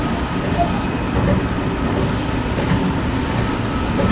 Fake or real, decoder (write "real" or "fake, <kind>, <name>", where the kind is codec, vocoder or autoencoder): real